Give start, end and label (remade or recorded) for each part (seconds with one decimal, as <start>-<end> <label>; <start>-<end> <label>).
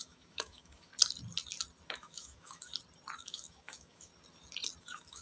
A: 0.0-0.9 remade; 0.9-1.9 recorded; 1.9-2.7 remade; 2.7-3.2 recorded; 3.2-4.1 remade; 4.1-4.8 recorded; 4.8-5.2 remade